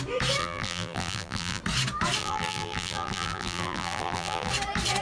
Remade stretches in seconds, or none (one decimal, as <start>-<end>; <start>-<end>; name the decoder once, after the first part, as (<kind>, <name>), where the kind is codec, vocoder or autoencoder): 0.4-1.6 (vocoder, BigVGAN v2); 2.2-4.5